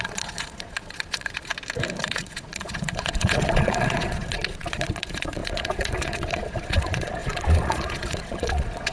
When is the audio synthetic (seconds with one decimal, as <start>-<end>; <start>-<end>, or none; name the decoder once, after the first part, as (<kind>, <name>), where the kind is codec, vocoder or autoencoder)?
0.0-1.5 (vocoder, Vocos); 2.0-8.9